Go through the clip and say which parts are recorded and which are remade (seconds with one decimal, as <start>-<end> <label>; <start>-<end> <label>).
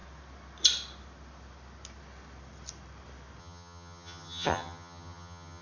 0.0-3.4 recorded; 3.4-5.6 remade